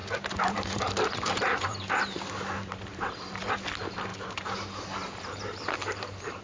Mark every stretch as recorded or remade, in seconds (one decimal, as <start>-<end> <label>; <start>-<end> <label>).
0.0-3.5 remade; 3.5-4.1 recorded; 4.1-6.4 remade

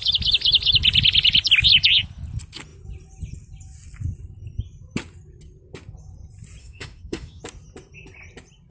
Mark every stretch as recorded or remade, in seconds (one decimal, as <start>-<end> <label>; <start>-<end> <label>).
0.0-6.6 recorded; 6.6-7.4 remade; 7.4-8.7 recorded

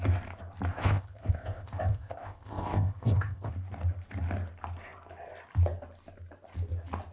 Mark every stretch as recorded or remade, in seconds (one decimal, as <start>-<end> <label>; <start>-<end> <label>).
0.0-0.7 recorded; 0.7-3.5 remade; 3.5-7.1 recorded

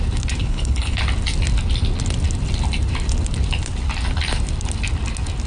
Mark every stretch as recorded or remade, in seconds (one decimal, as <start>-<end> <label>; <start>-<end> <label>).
0.0-0.4 recorded; 0.4-1.0 remade; 1.0-5.5 recorded

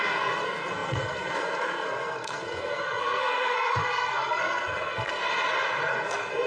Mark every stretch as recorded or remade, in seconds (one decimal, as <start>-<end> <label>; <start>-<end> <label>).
0.0-5.2 remade; 5.2-5.9 recorded; 5.9-6.5 remade

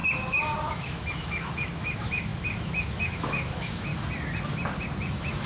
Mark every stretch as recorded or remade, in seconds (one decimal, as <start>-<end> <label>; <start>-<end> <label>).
0.0-0.7 recorded; 0.7-3.9 remade; 3.9-5.0 recorded; 5.0-5.5 remade